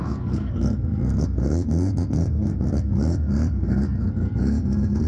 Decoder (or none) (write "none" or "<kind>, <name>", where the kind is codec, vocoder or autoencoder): codec, SNAC